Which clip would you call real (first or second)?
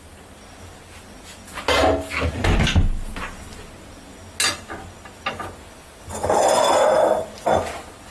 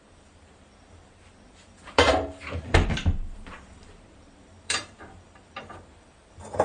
first